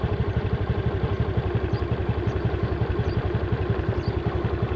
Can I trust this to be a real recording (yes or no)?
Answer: yes